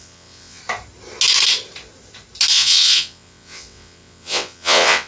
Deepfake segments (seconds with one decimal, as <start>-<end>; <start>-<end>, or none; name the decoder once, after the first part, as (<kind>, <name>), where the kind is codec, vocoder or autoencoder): 0.0-0.6 (vocoder, WaveNeXt); 2.5-5.1